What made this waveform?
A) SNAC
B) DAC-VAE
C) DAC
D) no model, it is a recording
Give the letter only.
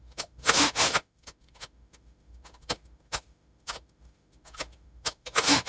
B